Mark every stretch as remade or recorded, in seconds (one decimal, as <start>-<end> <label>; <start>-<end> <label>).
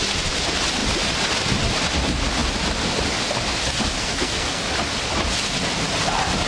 0.0-4.0 recorded; 4.0-4.6 remade; 4.6-6.5 recorded